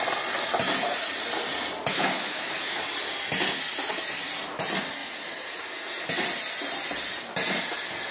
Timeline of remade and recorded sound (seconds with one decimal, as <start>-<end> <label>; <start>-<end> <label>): 0.0-1.9 recorded; 1.9-2.8 remade; 2.8-8.1 recorded